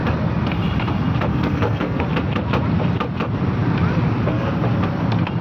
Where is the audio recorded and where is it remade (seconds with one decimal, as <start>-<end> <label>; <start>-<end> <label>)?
0.0-1.3 recorded; 1.3-2.0 remade; 2.0-5.4 recorded